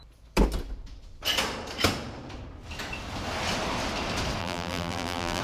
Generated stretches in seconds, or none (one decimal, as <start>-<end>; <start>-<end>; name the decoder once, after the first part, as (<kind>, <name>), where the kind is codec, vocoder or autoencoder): 4.4-5.4 (vocoder, BigVGAN v2)